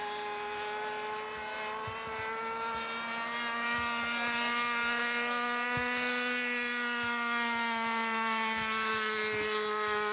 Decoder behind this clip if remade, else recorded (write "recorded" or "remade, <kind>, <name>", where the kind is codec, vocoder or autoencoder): recorded